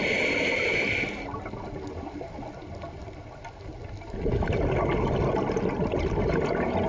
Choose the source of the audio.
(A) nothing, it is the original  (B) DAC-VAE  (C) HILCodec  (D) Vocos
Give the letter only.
A